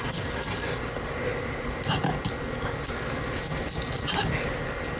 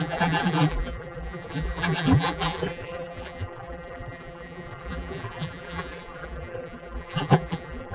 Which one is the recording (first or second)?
first